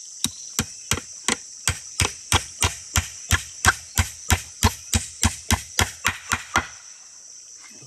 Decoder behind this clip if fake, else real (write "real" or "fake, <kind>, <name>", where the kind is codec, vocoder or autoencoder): real